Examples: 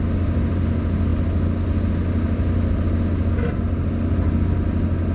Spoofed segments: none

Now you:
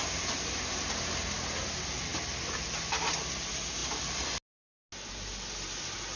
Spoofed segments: none

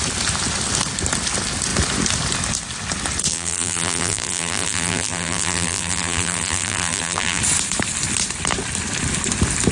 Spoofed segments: 3.3-7.4 (vocoder, BigVGAN v2)

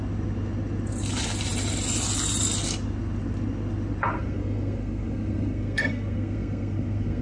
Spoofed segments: 4.1-7.2 (codec, SNAC)

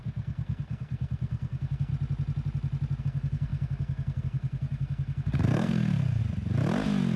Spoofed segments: 0.0-1.9 (codec, SNAC); 3.0-6.2

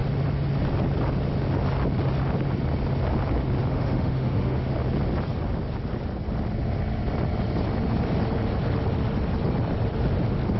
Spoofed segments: 3.7-4.7 (autoencoder, DAC-VAE)